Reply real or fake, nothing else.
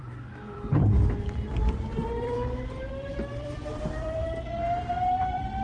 fake